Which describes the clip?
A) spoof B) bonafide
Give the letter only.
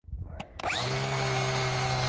B